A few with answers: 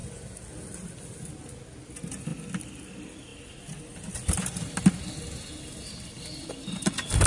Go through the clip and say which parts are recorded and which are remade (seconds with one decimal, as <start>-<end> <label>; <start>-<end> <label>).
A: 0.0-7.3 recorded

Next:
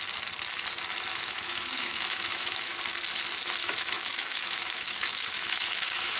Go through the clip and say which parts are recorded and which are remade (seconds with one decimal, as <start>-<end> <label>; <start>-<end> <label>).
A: 0.0-1.1 recorded; 1.1-2.8 remade; 2.8-3.6 recorded; 3.6-6.2 remade

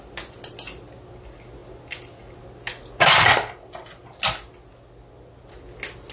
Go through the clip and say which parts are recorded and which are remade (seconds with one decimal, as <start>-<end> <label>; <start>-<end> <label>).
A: 0.0-6.1 recorded

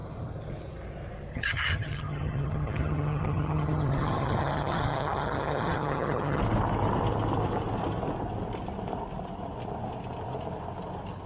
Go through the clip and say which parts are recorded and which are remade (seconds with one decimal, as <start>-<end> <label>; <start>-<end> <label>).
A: 0.0-1.3 recorded; 1.3-6.4 remade; 6.4-11.3 recorded

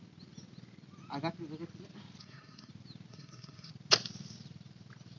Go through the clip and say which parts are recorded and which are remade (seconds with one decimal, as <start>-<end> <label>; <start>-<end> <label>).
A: 0.0-2.2 recorded; 2.2-2.7 remade; 2.7-3.1 recorded; 3.1-3.7 remade; 3.7-5.2 recorded